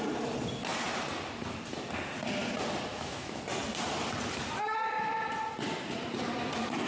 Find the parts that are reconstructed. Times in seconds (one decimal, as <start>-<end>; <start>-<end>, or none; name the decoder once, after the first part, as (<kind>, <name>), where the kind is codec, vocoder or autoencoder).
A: 2.9-3.4 (autoencoder, DAC-VAE)